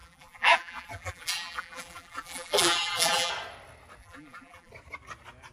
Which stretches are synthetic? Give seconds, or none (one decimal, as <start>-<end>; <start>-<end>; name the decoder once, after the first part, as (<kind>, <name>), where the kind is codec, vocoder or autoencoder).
0.0-3.3 (vocoder, BigVGAN v2); 4.0-4.7